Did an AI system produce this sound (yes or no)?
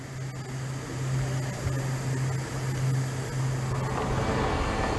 no